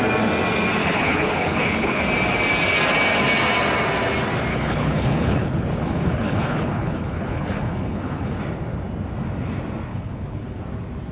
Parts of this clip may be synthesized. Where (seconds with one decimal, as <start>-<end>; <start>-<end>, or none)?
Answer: 0.8-2.0; 4.5-8.4; 9.9-10.6